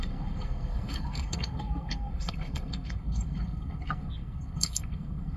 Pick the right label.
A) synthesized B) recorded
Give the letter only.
A